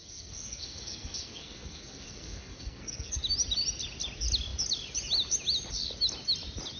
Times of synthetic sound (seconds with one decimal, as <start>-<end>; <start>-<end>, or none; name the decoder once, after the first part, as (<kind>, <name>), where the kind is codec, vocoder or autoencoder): 0.0-3.2 (codec, SNAC)